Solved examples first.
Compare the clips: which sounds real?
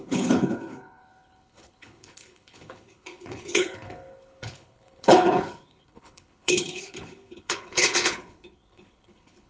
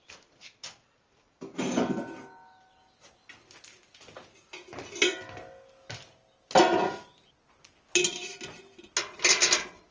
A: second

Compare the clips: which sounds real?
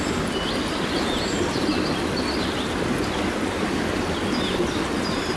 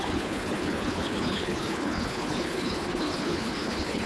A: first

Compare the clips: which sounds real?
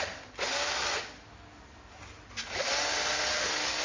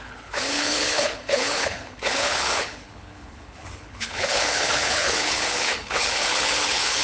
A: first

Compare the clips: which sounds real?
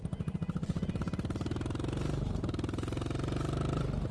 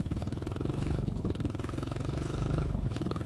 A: first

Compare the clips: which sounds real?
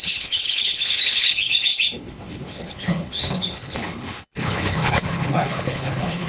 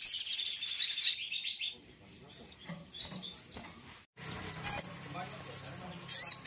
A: second